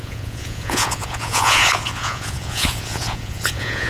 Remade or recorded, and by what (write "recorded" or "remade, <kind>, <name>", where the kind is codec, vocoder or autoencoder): remade, vocoder, Vocos